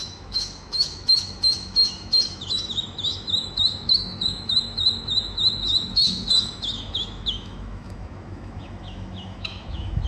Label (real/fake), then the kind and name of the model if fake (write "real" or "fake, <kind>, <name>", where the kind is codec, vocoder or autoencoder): fake, autoencoder, DAC-VAE